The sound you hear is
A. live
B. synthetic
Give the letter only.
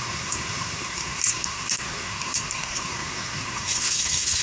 B